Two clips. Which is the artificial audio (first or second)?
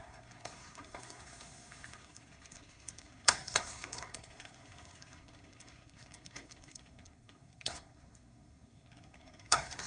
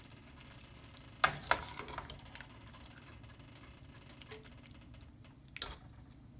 first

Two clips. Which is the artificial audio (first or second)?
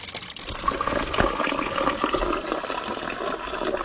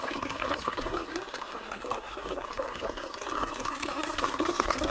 second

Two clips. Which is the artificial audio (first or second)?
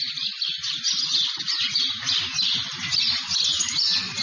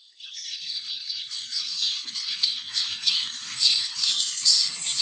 second